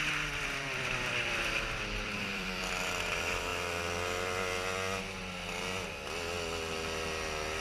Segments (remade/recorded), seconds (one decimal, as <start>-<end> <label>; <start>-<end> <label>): 0.0-3.5 remade; 3.5-7.6 recorded